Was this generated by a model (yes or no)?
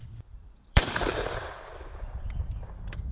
yes